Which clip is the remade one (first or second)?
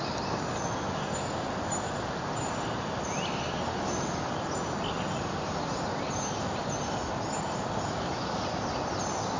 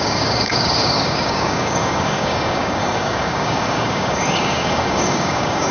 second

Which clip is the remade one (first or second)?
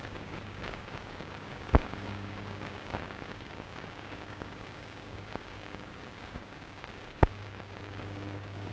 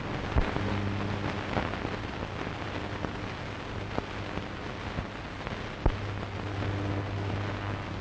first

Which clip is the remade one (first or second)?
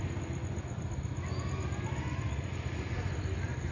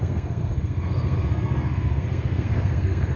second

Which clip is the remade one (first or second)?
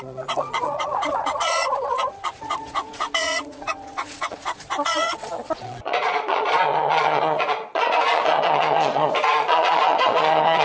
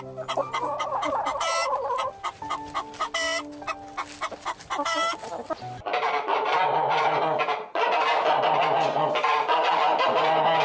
first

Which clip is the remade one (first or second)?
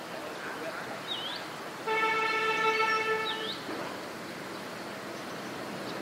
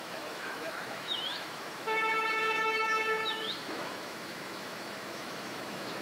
second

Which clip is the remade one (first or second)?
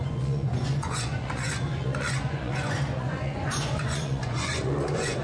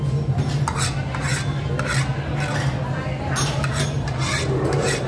first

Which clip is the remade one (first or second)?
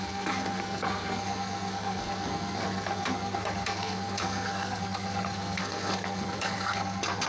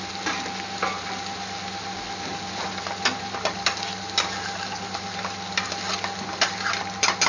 first